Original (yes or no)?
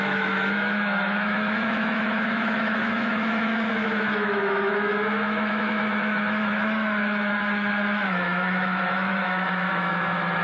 no